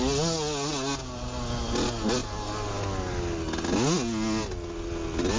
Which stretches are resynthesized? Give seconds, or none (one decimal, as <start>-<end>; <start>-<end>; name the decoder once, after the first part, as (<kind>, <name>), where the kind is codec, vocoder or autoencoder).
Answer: none